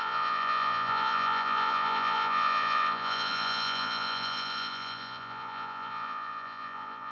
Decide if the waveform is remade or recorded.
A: remade